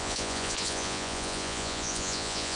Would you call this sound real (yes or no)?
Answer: no